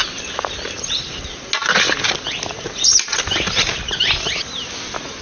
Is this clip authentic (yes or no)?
yes